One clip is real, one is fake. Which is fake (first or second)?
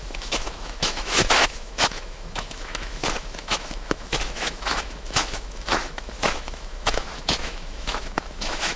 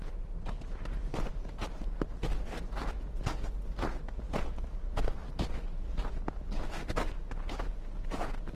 first